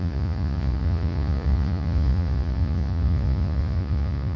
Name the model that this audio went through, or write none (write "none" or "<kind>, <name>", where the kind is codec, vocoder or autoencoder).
vocoder, Vocos